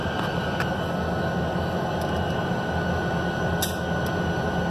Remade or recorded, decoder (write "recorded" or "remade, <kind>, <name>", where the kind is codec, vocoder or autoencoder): recorded